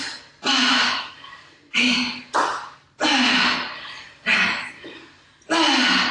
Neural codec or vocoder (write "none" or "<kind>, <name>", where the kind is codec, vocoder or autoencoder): none